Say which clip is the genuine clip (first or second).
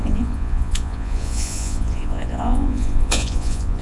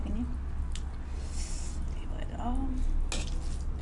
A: second